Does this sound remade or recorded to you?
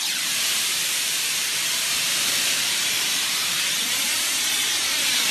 remade